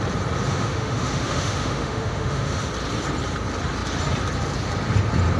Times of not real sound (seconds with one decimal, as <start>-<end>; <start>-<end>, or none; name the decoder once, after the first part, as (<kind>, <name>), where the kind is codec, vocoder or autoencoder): 0.5-2.7 (autoencoder, DAC-VAE)